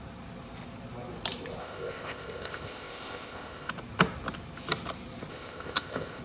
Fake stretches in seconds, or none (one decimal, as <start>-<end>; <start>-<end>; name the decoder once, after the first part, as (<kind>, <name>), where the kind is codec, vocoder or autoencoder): 1.6-3.7 (codec, ZipCodec); 5.3-6.2